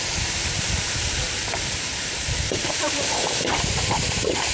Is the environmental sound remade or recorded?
remade